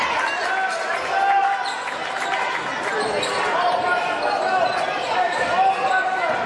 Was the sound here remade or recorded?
recorded